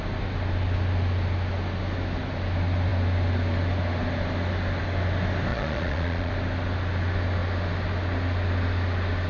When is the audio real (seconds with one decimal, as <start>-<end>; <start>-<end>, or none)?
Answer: 0.0-5.5; 6.3-9.3